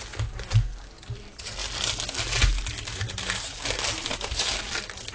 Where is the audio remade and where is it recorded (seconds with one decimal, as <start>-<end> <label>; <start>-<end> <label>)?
0.0-5.1 recorded